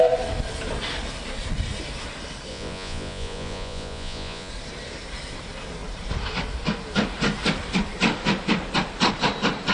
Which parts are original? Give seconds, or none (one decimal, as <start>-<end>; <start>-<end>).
0.0-2.5; 4.5-9.7